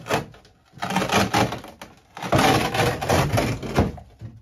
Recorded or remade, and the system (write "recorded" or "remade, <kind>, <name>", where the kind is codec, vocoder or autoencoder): recorded